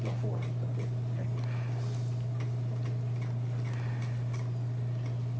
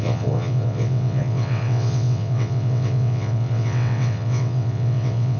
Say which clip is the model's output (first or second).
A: second